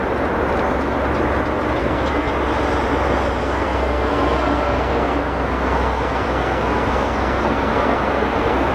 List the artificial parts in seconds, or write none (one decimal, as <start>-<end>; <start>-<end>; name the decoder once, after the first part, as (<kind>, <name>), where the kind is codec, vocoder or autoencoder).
1.8-2.3 (codec, SNAC); 3.4-8.7

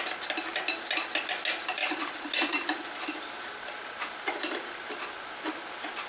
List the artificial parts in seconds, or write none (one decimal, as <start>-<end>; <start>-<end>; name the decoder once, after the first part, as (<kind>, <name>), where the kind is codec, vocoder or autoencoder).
none

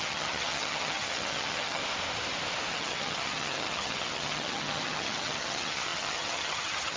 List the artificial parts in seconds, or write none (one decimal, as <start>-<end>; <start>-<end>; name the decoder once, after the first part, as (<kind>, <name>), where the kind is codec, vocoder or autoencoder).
0.0-1.8 (vocoder, HiFi-GAN); 2.7-7.0